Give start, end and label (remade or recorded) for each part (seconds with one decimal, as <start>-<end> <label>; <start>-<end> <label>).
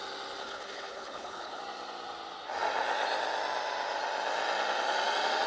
0.0-0.4 recorded; 0.4-1.6 remade; 1.6-5.5 recorded